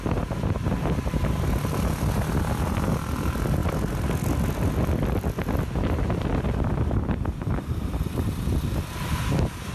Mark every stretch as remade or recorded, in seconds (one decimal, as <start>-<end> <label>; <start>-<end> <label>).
0.0-9.7 recorded